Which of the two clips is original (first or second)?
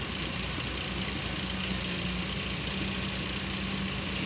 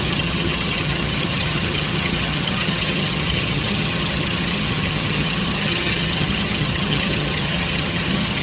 first